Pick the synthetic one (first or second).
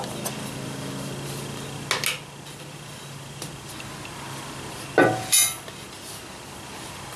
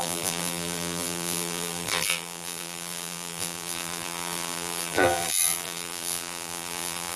second